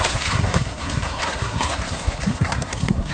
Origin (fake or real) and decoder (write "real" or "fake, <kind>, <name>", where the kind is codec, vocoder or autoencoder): fake, codec, SNAC